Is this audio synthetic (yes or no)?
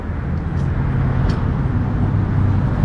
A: no